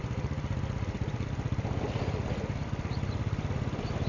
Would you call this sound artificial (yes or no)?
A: no